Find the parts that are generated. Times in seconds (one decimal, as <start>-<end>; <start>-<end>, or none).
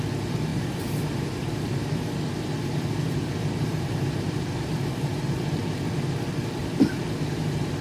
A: 0.5-5.2; 6.6-7.8